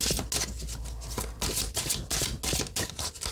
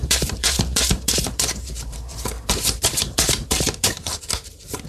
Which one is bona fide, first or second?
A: first